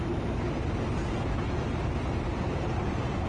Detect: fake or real real